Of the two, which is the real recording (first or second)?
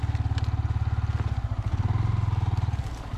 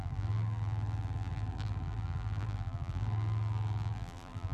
first